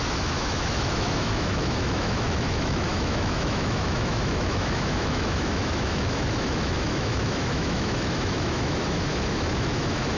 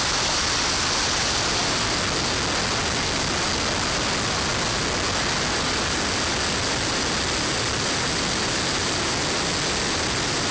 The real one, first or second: second